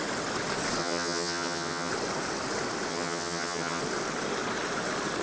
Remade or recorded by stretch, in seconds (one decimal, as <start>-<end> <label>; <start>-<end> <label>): 0.0-0.8 recorded; 0.8-1.9 remade; 1.9-2.9 recorded; 2.9-3.8 remade; 3.8-5.2 recorded